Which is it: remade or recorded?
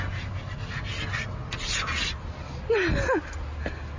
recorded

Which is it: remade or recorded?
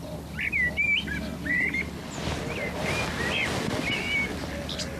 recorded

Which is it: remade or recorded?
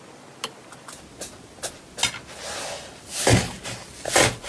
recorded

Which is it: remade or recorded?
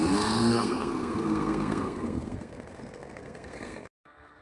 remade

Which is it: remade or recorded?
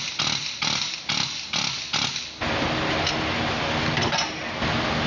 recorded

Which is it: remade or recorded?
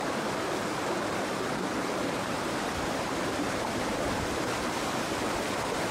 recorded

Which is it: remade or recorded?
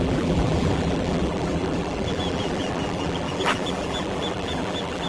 remade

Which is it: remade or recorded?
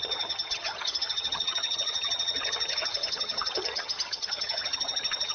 remade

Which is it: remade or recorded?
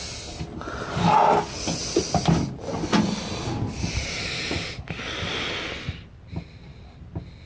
recorded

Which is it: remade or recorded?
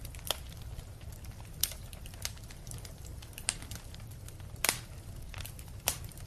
remade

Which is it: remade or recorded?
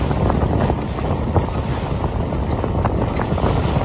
recorded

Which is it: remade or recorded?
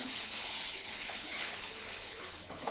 remade